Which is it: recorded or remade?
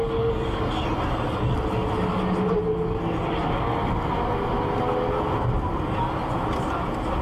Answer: recorded